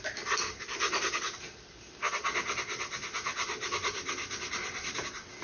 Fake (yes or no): no